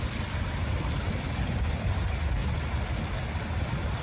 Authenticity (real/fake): real